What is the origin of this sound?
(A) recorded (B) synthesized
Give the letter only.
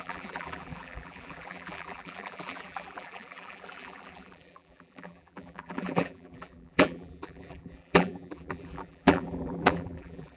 B